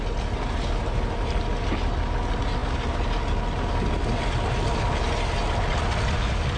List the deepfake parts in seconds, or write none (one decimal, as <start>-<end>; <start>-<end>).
none